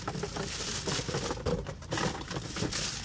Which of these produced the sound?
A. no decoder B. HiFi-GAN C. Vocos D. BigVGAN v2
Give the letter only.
A